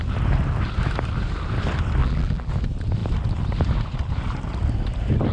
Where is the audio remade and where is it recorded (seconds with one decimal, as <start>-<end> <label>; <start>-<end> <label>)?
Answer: 0.0-2.0 recorded; 2.0-2.5 remade; 2.5-5.3 recorded